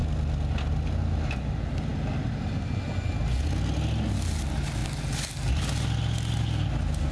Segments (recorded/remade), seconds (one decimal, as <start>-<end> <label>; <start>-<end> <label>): 0.0-7.1 recorded